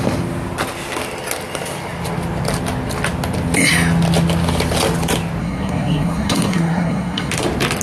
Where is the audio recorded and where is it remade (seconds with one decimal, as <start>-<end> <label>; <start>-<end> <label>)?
0.0-5.4 recorded; 5.4-7.3 remade; 7.3-7.8 recorded